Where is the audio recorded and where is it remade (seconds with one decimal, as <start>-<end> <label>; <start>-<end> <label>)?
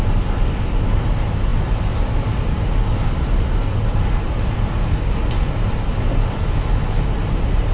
0.0-7.7 recorded